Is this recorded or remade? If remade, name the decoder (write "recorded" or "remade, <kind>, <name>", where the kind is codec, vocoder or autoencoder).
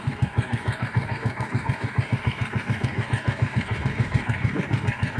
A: remade, codec, DAC